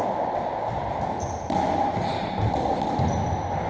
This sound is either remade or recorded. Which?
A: recorded